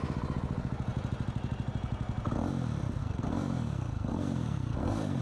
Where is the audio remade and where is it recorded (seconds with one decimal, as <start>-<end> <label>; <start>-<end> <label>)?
0.0-3.0 recorded; 3.0-5.2 remade